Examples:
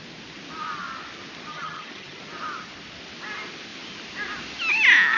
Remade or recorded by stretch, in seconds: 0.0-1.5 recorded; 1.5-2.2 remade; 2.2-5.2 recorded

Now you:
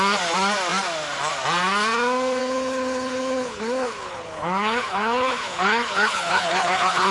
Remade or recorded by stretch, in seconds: 0.0-2.4 recorded; 2.4-7.1 remade